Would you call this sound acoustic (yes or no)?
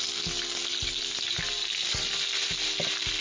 yes